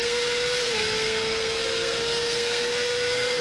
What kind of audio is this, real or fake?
fake